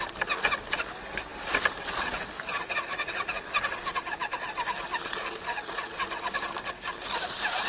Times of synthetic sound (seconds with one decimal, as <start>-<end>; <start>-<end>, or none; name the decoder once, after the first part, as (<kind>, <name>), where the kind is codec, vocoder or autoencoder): none